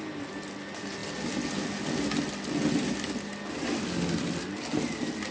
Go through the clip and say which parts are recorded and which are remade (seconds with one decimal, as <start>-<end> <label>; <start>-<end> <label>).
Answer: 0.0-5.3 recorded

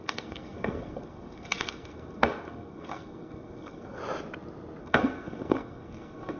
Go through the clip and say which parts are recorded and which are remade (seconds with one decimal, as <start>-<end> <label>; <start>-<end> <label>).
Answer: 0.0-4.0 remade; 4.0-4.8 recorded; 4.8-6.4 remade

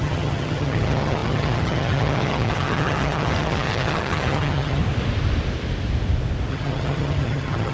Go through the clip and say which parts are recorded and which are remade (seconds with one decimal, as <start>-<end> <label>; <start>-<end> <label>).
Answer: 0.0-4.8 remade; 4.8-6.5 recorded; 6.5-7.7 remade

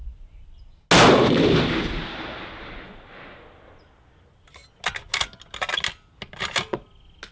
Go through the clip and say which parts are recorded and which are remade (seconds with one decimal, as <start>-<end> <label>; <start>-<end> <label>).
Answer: 0.0-7.3 recorded